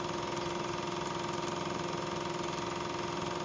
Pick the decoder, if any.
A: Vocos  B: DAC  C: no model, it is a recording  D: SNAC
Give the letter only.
C